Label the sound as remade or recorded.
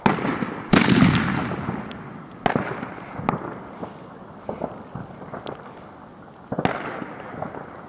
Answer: recorded